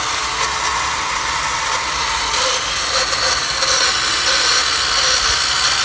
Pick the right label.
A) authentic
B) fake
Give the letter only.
A